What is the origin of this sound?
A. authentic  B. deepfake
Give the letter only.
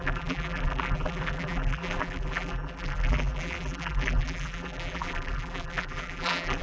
B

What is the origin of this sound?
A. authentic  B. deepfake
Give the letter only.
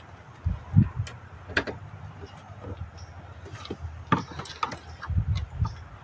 A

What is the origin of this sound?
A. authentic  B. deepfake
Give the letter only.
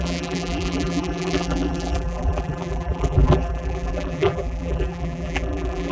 B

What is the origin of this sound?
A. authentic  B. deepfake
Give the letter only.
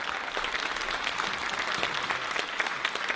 A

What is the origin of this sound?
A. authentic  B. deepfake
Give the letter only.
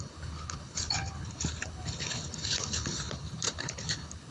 B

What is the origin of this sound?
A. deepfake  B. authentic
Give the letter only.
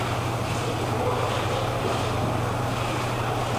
B